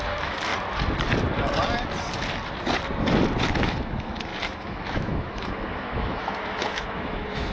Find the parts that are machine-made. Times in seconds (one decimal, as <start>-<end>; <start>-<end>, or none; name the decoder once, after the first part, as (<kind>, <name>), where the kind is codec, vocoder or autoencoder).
0.0-0.5 (autoencoder, DAC-VAE); 3.5-7.5